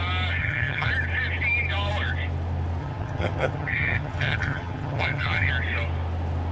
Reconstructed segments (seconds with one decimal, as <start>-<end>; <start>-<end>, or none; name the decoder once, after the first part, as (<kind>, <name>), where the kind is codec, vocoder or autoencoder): 0.4-0.9 (vocoder, HiFi-GAN); 2.8-5.5